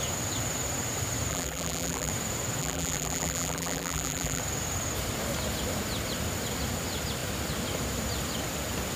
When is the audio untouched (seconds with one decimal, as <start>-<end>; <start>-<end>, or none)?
0.0-1.3; 2.1-2.6; 4.4-9.0